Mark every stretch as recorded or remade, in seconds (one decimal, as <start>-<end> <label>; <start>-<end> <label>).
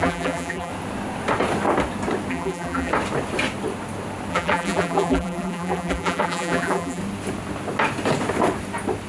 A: 0.0-0.7 remade; 0.7-2.3 recorded; 2.3-2.9 remade; 2.9-4.3 recorded; 4.3-7.0 remade; 7.0-9.1 recorded